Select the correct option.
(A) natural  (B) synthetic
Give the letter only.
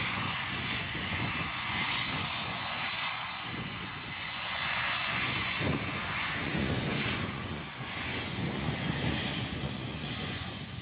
B